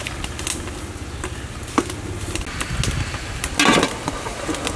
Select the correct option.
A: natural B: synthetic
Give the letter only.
A